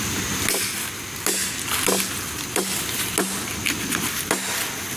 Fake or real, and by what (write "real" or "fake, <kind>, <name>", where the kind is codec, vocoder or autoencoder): real